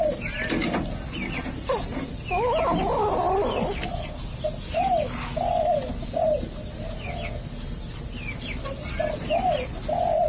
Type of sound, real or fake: real